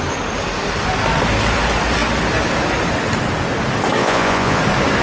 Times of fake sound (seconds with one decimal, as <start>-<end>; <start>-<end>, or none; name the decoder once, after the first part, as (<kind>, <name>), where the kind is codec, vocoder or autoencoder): 4.0-4.6 (vocoder, Vocos)